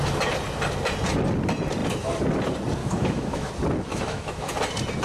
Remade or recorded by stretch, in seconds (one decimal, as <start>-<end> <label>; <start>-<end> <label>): 0.0-2.8 recorded; 2.8-3.5 remade; 3.5-3.9 recorded; 3.9-4.5 remade; 4.5-5.0 recorded